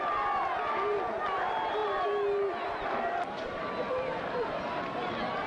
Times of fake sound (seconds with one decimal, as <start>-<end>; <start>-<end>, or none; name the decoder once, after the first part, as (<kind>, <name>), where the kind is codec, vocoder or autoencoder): 1.8-3.6 (vocoder, BigVGAN v2)